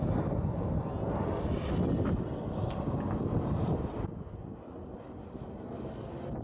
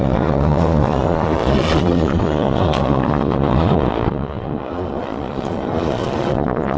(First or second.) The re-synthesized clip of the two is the second